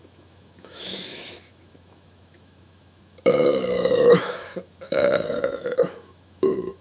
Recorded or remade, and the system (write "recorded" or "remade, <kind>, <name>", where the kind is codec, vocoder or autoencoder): remade, autoencoder, DAC-VAE